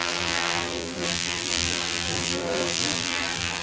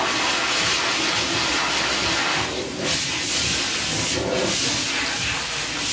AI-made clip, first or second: first